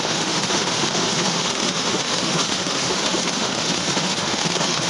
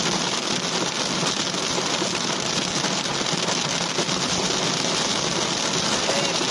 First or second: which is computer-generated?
first